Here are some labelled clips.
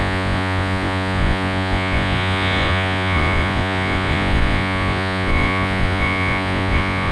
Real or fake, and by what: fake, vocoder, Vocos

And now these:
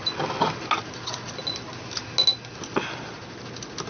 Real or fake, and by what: real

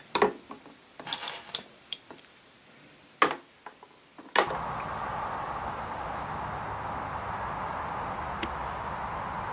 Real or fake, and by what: real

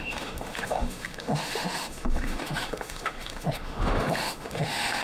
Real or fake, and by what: fake, autoencoder, DAC-VAE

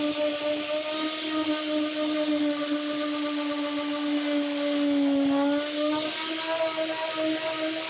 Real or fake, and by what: real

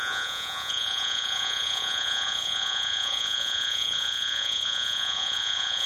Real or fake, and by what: fake, vocoder, Vocos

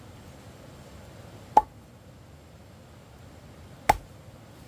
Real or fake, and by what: real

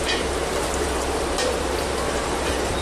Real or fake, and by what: fake, vocoder, BigVGAN v2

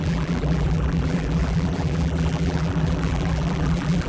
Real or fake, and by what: fake, vocoder, BigVGAN v2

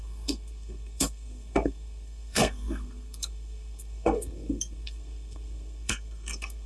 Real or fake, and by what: fake, codec, SNAC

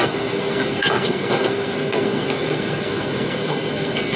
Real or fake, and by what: fake, codec, SNAC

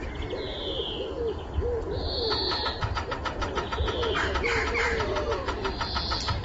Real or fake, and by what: real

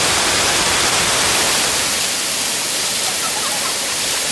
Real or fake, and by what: fake, vocoder, BigVGAN v2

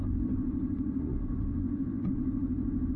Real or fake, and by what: fake, vocoder, Vocos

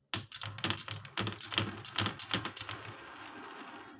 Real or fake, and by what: real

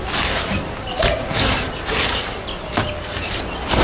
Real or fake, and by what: real